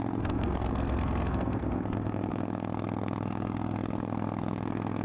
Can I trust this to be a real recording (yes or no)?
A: no